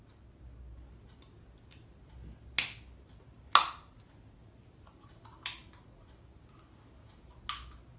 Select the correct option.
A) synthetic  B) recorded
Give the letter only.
B